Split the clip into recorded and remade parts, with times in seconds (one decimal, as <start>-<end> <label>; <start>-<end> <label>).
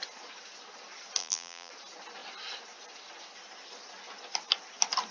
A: 0.0-1.2 recorded; 1.2-1.7 remade; 1.7-5.1 recorded